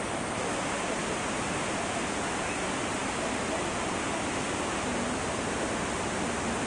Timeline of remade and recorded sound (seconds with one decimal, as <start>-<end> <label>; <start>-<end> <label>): 0.0-6.7 recorded